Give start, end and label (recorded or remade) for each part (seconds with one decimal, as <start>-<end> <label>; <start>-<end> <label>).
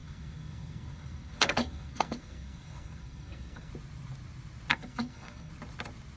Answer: 0.0-3.7 remade; 3.7-4.7 recorded; 4.7-5.5 remade; 5.5-6.2 recorded